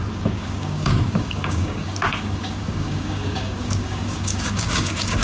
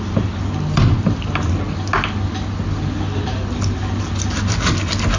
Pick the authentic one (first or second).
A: second